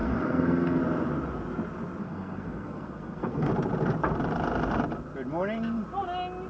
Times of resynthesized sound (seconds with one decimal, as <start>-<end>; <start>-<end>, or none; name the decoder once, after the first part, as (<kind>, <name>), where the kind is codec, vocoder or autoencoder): 0.0-0.8 (codec, SNAC); 2.0-3.5